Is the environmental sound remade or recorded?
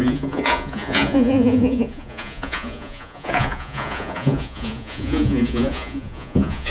remade